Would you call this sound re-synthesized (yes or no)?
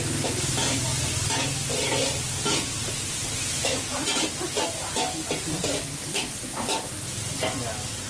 no